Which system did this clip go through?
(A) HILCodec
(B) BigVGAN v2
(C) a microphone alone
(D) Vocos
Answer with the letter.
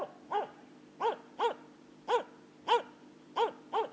C